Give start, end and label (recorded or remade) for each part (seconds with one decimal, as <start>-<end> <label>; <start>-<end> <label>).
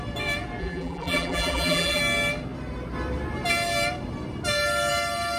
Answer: 0.0-0.6 recorded; 0.6-2.0 remade; 2.0-5.4 recorded